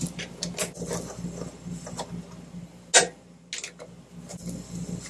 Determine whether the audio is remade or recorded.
recorded